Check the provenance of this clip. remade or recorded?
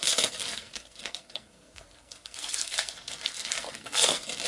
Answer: remade